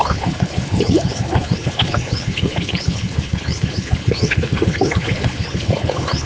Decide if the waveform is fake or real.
fake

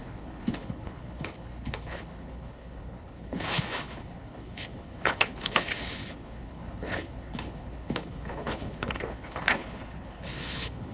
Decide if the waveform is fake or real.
fake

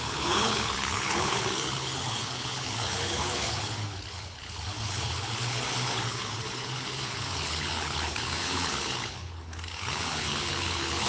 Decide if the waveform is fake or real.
fake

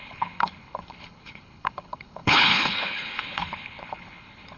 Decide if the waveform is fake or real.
fake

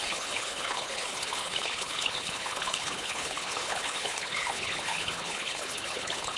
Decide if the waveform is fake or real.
fake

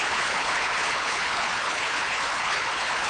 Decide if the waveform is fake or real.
fake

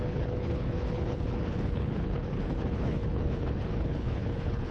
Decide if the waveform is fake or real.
fake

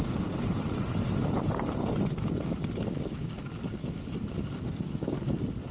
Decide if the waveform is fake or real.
real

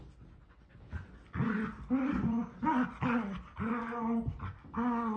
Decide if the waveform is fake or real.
real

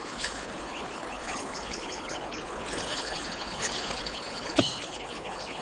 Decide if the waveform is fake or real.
fake